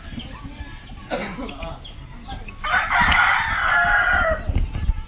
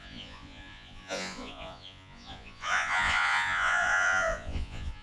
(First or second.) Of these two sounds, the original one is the first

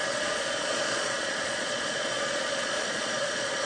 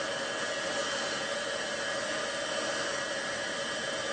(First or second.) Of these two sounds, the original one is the second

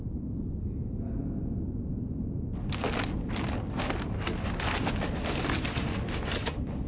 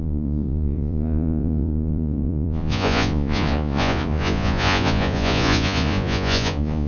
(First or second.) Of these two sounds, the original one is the first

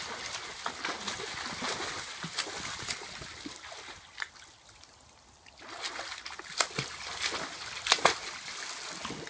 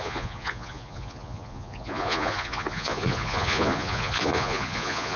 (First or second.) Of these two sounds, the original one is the first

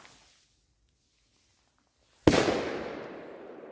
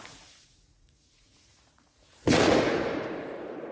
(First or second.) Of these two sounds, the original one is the first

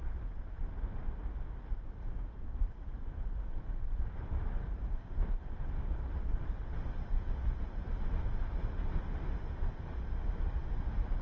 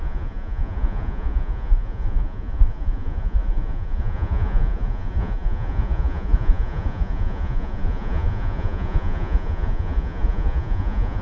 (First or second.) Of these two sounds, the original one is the first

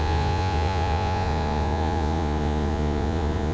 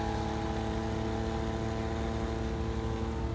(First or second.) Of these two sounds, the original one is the second